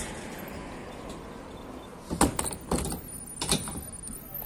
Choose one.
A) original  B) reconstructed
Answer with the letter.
A